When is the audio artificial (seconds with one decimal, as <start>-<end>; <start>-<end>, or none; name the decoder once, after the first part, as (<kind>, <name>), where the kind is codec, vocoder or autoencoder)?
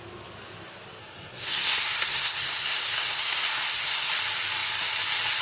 1.0-4.1 (codec, SNAC)